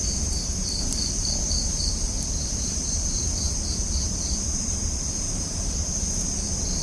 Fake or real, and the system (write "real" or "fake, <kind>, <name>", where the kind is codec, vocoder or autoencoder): fake, vocoder, BigVGAN v2